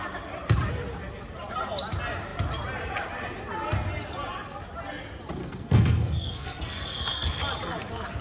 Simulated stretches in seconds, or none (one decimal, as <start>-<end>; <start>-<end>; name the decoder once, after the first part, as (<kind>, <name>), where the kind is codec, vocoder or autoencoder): 5.4-7.4 (codec, SNAC)